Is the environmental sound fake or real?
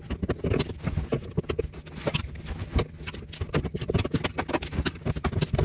real